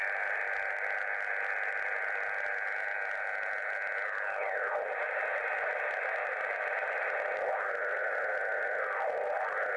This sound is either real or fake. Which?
real